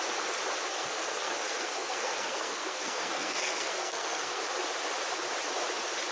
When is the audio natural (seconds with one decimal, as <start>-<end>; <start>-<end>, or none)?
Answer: 0.0-0.7; 4.4-6.1